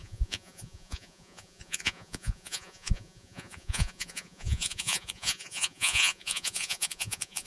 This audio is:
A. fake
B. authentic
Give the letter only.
A